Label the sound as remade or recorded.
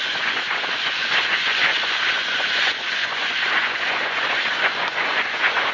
remade